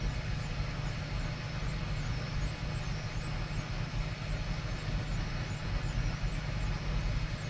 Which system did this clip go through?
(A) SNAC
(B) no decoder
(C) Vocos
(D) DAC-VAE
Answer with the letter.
B